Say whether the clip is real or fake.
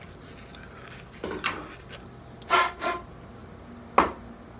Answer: real